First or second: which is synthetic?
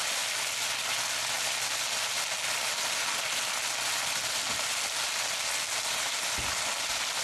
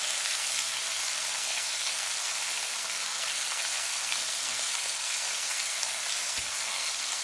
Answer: second